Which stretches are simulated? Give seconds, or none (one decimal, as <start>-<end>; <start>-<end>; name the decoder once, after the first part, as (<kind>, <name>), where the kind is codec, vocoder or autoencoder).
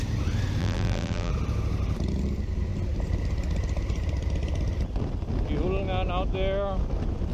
0.6-1.3 (vocoder, BigVGAN v2)